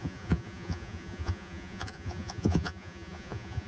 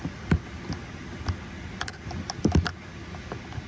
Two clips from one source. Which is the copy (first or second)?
first